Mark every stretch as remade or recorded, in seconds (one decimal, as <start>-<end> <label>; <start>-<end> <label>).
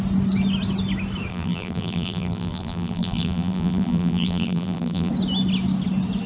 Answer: 0.0-1.3 recorded; 1.3-5.1 remade; 5.1-6.3 recorded